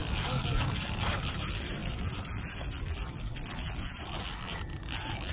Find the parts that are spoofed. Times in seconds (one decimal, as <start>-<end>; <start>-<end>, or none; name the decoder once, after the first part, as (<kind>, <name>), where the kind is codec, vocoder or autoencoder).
0.0-5.3 (vocoder, BigVGAN v2)